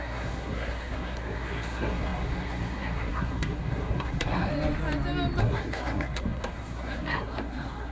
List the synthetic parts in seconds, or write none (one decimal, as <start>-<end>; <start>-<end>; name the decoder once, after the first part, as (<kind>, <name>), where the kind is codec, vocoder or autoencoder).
0.0-4.5 (codec, SNAC); 5.4-7.9